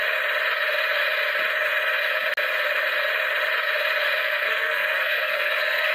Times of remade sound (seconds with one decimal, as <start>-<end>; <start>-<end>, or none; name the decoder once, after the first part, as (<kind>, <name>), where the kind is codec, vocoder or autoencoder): 4.2-5.9 (codec, SNAC)